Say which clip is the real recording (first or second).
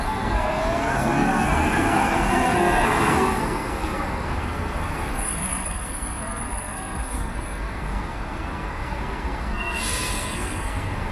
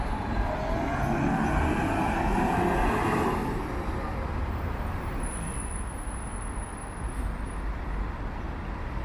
second